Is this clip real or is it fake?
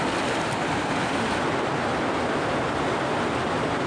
real